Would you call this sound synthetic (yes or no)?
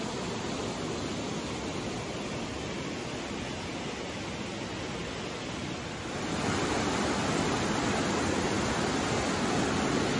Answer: no